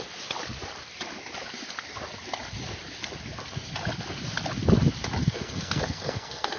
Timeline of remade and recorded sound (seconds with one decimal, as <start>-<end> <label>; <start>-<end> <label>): 0.0-5.2 recorded; 5.2-6.6 remade